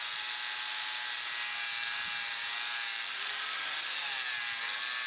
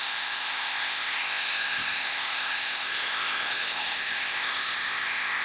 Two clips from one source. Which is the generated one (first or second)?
second